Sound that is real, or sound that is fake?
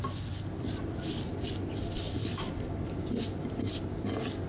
real